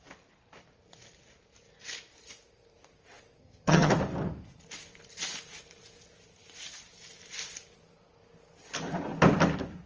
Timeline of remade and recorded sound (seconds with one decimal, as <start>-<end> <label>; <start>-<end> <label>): 0.0-3.4 recorded; 3.4-3.9 remade; 3.9-9.9 recorded